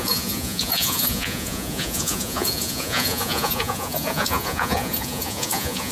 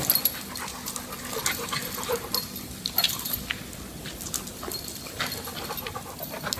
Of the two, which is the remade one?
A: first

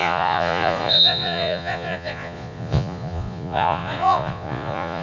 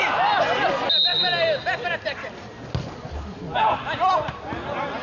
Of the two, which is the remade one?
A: first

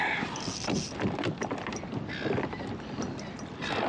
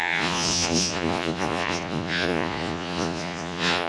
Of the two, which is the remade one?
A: second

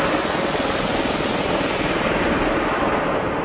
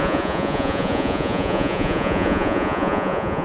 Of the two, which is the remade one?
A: second